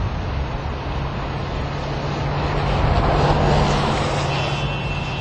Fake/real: real